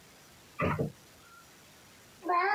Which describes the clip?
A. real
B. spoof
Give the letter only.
A